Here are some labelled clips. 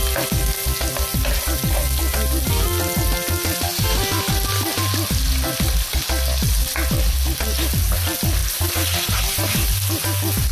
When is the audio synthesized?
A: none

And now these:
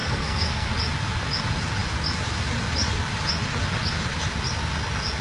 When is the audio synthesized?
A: 0.0-0.7

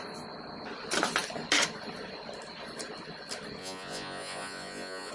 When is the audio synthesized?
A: 3.6-5.1

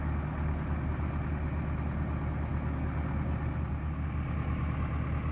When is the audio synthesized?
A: none

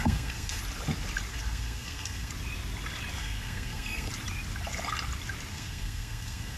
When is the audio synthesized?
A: 0.0-0.6; 1.3-2.3; 3.2-4.1; 5.5-6.6

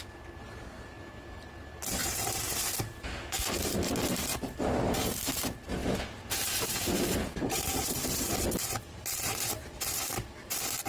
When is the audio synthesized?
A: 2.0-2.6; 5.8-8.3